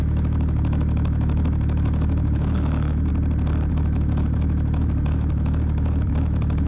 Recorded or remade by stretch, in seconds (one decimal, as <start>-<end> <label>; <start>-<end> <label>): 0.0-3.1 remade; 3.1-3.7 recorded; 3.7-6.7 remade